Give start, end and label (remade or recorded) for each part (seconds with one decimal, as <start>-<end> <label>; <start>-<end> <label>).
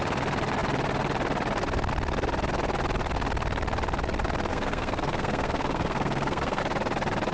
0.0-4.5 recorded; 4.5-6.6 remade; 6.6-7.3 recorded